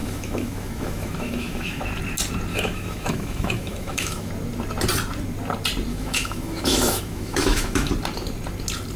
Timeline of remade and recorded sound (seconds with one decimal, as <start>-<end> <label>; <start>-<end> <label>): 0.0-1.8 remade; 1.8-2.5 recorded; 2.5-4.3 remade; 4.3-5.9 recorded; 5.9-7.9 remade; 7.9-9.0 recorded